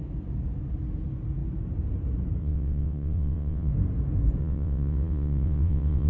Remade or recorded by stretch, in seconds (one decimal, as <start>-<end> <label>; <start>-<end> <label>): 0.0-2.4 recorded; 2.4-3.7 remade; 3.7-4.4 recorded; 4.4-6.1 remade